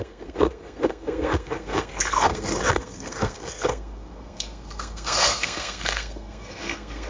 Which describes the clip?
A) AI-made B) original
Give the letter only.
A